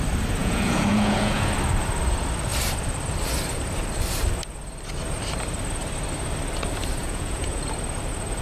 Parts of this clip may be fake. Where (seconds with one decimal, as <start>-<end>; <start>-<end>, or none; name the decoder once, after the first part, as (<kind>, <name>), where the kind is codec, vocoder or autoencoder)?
0.4-1.5 (vocoder, Vocos); 7.0-7.6